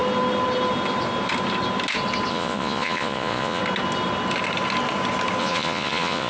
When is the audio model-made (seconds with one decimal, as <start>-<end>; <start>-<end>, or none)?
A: 2.3-3.6; 5.4-6.3

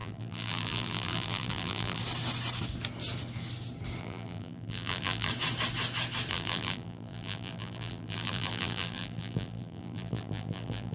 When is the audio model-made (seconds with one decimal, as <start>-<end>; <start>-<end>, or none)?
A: 0.0-2.0; 4.0-5.3; 6.3-10.9

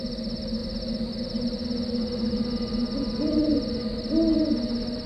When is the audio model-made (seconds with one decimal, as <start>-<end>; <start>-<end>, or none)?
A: none